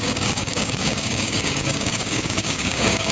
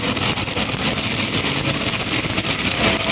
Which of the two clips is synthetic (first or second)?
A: first